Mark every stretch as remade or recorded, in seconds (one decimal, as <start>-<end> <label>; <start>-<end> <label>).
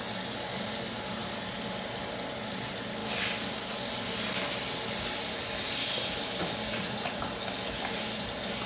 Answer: 0.0-6.7 recorded; 6.7-7.2 remade; 7.2-8.7 recorded